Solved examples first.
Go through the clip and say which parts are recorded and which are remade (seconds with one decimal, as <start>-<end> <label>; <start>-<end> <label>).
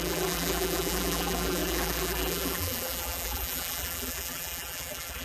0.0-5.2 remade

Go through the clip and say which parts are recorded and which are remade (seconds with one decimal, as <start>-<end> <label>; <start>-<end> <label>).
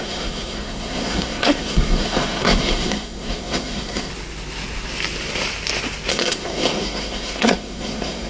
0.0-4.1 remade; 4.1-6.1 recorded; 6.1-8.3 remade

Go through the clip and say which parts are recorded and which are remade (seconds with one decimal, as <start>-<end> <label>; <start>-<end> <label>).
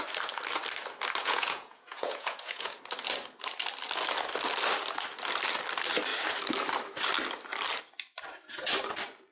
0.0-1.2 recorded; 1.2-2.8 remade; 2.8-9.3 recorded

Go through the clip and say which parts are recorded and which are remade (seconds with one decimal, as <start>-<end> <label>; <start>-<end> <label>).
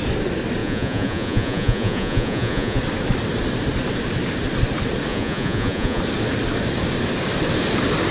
0.0-0.6 recorded; 0.6-2.8 remade; 2.8-5.1 recorded; 5.1-6.0 remade; 6.0-8.1 recorded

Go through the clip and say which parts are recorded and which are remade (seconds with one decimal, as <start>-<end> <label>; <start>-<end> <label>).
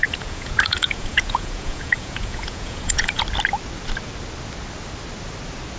0.0-3.2 remade; 3.2-5.8 recorded